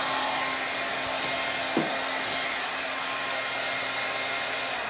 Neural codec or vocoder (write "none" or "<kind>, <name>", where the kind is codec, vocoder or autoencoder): none